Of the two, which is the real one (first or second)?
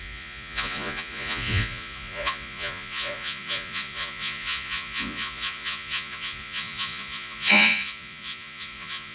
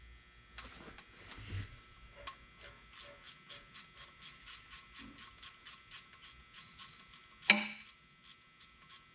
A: second